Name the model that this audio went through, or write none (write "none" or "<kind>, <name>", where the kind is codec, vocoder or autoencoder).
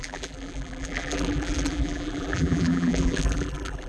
vocoder, BigVGAN v2